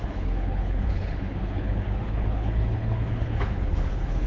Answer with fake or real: fake